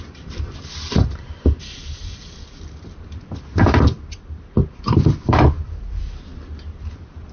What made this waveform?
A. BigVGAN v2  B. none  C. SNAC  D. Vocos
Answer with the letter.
A